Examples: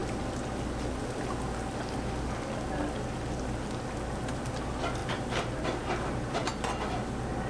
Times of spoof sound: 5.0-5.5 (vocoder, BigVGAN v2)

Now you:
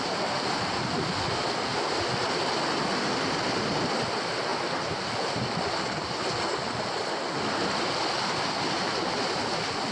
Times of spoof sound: none

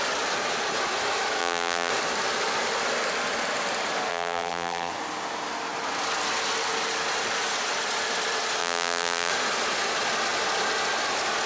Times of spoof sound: 1.4-1.9 (vocoder, BigVGAN v2); 4.1-4.9; 8.6-9.3

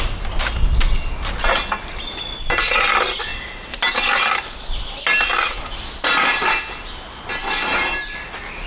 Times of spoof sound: none